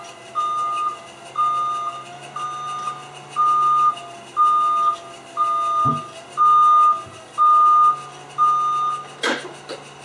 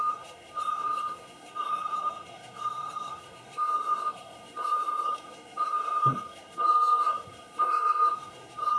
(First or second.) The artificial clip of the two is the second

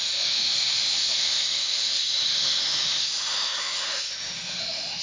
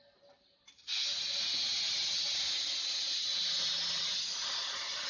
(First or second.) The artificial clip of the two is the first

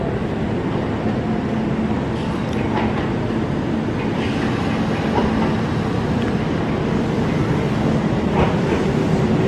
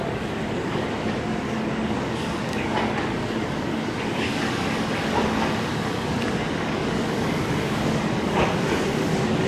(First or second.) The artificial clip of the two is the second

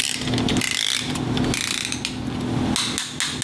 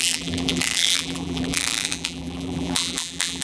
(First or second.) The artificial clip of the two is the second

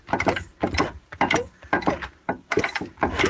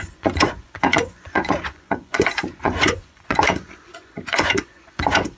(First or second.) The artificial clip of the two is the second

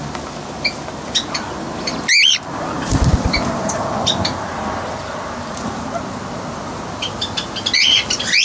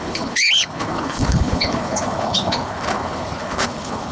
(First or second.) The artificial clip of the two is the second